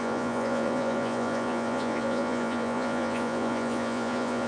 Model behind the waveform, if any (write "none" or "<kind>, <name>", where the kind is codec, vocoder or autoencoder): vocoder, Vocos